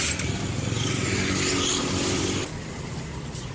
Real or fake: real